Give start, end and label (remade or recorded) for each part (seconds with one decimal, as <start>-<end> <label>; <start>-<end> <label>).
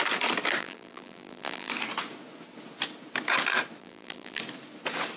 0.0-0.6 recorded; 0.6-1.7 remade; 1.7-3.8 recorded; 3.8-4.4 remade; 4.4-5.2 recorded